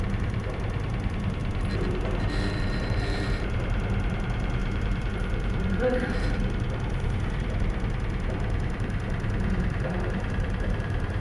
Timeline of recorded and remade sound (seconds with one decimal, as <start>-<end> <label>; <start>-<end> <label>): 0.0-1.4 remade; 1.4-2.2 recorded; 2.2-11.2 remade